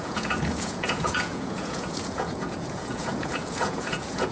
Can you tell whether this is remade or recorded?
remade